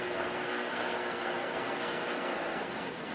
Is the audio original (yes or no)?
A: no